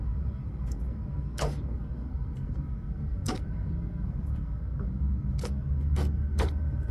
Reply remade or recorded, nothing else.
remade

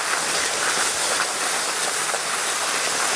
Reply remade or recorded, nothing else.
recorded